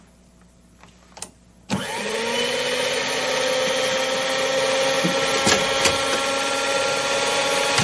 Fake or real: real